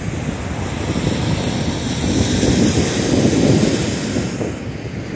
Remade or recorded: recorded